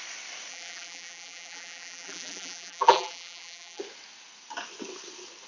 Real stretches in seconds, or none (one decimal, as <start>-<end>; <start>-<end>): 0.0-0.5; 3.8-5.5